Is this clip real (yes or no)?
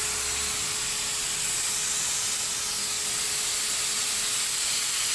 yes